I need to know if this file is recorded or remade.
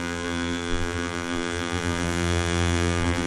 remade